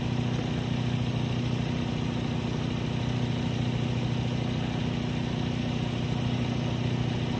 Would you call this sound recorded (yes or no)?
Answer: yes